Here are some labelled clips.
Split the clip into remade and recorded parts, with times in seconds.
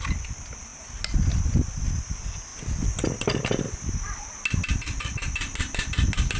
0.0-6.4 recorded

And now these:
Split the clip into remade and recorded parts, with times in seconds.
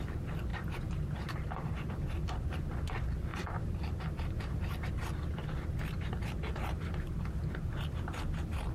0.0-0.5 recorded; 0.5-1.9 remade; 1.9-3.3 recorded; 3.3-4.9 remade; 4.9-8.7 recorded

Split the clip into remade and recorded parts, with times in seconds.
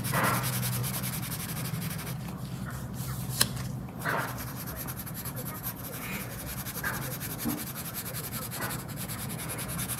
0.0-0.8 remade; 0.8-5.0 recorded; 5.0-6.5 remade; 6.5-7.6 recorded; 7.6-10.0 remade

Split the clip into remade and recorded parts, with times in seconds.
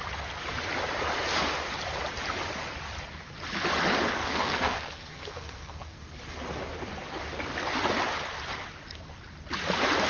0.0-4.2 recorded; 4.2-6.1 remade; 6.1-10.1 recorded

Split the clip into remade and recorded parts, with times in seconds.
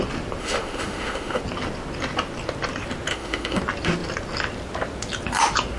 0.0-0.4 recorded; 0.4-1.4 remade; 1.4-3.1 recorded; 3.1-3.6 remade; 3.6-5.8 recorded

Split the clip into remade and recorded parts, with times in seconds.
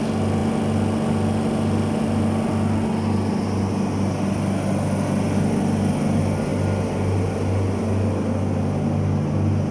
0.0-9.7 recorded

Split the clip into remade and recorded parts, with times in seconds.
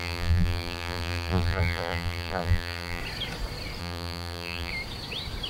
0.0-3.0 remade; 3.0-3.8 recorded; 3.8-4.7 remade; 4.7-5.5 recorded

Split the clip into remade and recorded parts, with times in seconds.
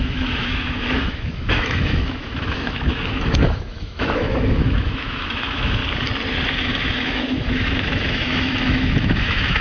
0.0-5.8 remade; 5.8-6.6 recorded; 6.6-9.6 remade